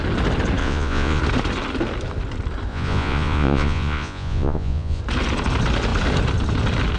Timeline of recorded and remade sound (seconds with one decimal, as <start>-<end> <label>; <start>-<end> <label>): 0.0-0.6 recorded; 0.6-1.2 remade; 1.2-2.7 recorded; 2.7-5.0 remade; 5.0-7.0 recorded

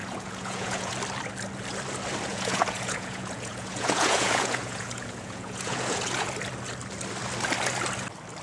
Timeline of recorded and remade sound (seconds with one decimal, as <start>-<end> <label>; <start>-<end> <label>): 0.0-0.9 remade; 0.9-2.3 recorded; 2.3-6.3 remade; 6.3-8.4 recorded